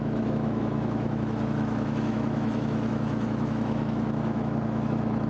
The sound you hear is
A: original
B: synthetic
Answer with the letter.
B